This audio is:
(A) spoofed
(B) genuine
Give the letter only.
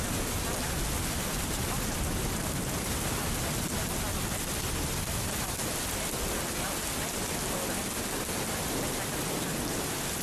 B